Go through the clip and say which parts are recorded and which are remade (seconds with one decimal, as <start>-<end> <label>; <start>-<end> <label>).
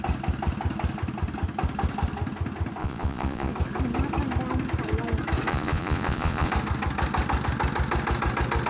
0.0-2.8 recorded; 2.8-3.5 remade; 3.5-5.5 recorded; 5.5-6.5 remade; 6.5-8.7 recorded